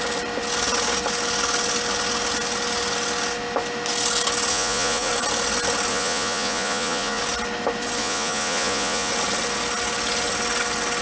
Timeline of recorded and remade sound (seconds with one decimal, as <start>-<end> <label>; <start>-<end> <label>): 0.0-4.5 recorded; 4.5-5.1 remade; 5.1-5.9 recorded; 5.9-7.2 remade; 7.2-8.0 recorded; 8.0-9.1 remade; 9.1-11.0 recorded